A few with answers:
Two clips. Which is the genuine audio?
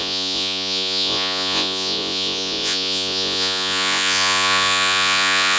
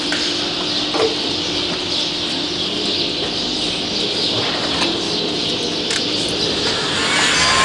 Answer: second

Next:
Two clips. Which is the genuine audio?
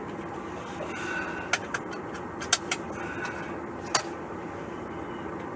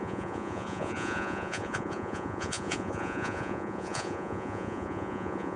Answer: first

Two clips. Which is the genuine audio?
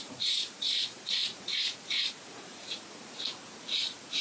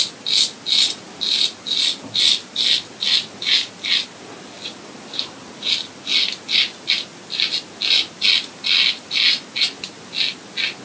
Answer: second